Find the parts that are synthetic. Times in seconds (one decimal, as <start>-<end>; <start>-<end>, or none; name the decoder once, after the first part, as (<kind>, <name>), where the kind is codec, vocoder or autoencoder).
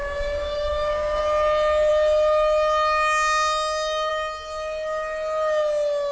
0.0-1.2 (codec, DAC)